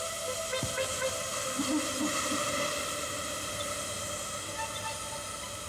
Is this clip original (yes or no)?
yes